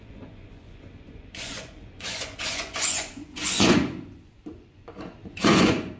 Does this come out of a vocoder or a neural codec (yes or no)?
yes